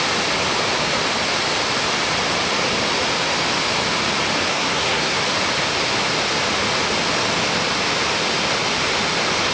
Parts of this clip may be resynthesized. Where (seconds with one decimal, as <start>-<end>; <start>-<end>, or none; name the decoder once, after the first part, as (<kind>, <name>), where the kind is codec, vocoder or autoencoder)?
4.5-5.2 (codec, SNAC)